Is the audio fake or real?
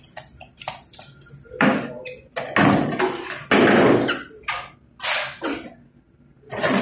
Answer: real